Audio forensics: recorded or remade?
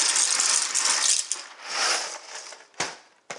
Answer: recorded